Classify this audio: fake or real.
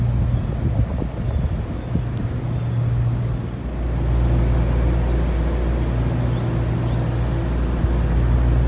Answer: real